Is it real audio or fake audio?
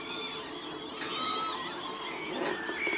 real